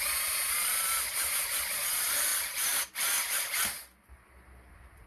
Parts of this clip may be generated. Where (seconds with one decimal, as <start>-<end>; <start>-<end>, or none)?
0.0-5.1